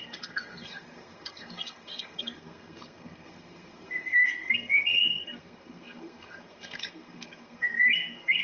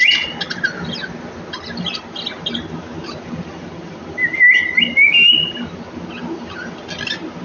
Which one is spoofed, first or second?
first